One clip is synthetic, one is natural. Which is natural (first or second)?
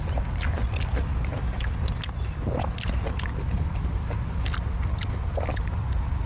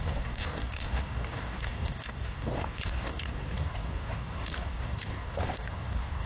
first